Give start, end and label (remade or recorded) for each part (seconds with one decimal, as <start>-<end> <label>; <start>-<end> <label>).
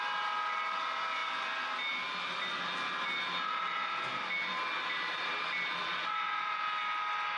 0.0-7.4 recorded